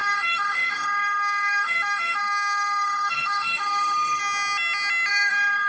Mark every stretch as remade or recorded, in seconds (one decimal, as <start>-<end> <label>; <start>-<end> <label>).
0.0-4.2 remade; 4.2-5.1 recorded; 5.1-5.7 remade

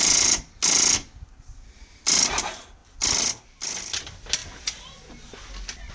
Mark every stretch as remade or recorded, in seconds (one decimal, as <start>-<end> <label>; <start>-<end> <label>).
0.0-5.9 recorded